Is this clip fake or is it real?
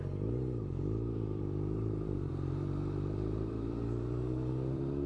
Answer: fake